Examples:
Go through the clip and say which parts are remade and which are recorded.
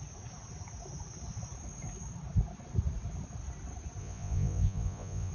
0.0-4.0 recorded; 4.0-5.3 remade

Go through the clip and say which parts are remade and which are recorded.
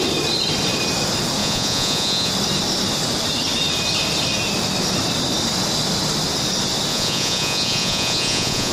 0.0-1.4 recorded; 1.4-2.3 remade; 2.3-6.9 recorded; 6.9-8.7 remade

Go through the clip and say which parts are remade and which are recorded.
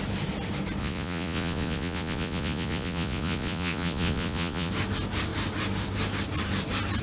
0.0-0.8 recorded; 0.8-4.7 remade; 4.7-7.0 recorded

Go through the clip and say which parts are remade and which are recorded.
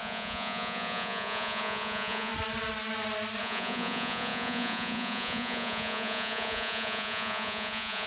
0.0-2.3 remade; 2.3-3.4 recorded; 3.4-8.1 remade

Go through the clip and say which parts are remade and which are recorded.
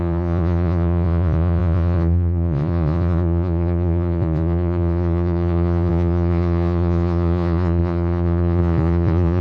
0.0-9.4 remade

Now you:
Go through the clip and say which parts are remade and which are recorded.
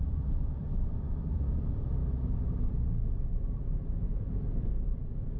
0.0-0.6 remade; 0.6-1.3 recorded; 1.3-2.0 remade; 2.0-2.7 recorded; 2.7-5.4 remade